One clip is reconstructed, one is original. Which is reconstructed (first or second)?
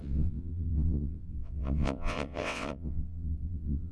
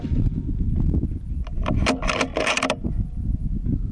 first